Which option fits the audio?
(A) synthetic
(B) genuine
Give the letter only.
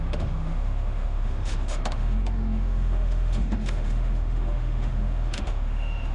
A